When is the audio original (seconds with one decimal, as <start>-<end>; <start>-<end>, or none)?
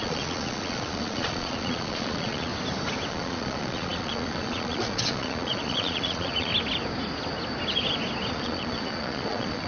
2.5-3.1; 6.5-8.3